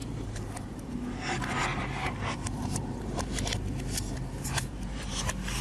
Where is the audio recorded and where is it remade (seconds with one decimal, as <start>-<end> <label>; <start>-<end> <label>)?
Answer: 0.0-1.0 remade; 1.0-1.7 recorded; 1.7-5.1 remade; 5.1-5.6 recorded